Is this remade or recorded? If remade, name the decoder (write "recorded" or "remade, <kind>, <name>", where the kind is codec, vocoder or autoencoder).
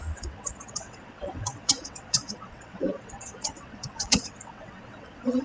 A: remade, vocoder, WaveNeXt